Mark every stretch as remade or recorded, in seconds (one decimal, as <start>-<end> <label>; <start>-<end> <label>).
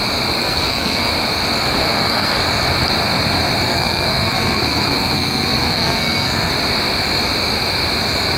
0.0-0.4 recorded; 0.4-1.1 remade; 1.1-1.8 recorded; 1.8-2.4 remade; 2.4-3.7 recorded; 3.7-6.5 remade; 6.5-8.4 recorded